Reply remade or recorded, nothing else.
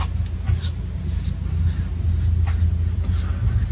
recorded